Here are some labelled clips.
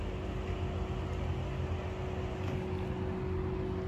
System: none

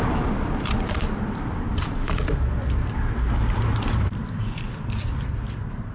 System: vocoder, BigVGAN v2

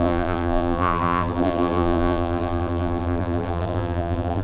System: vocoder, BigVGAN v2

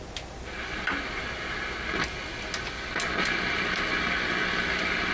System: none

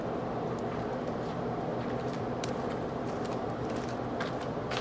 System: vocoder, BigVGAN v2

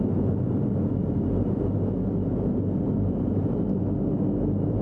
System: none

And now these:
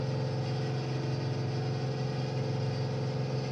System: none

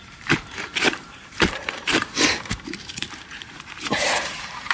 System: vocoder, BigVGAN v2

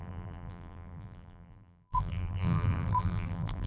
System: vocoder, BigVGAN v2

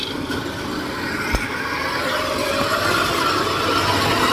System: none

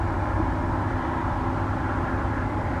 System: none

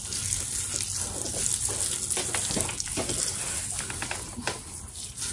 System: none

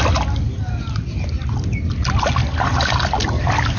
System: none